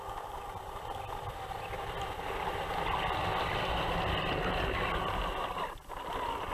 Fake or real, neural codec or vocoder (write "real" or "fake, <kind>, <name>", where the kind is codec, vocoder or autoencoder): real